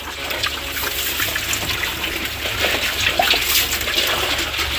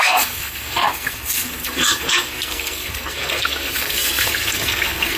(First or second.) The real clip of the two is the first